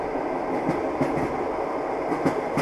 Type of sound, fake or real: real